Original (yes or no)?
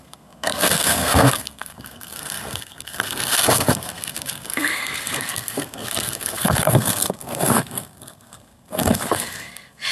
no